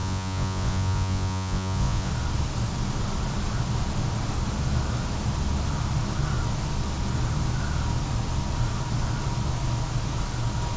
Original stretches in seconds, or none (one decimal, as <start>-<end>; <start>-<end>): 2.1-10.8